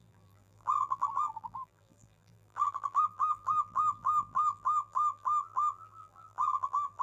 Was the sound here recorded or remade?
remade